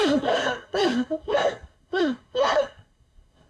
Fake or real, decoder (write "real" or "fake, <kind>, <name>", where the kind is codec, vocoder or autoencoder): fake, codec, SNAC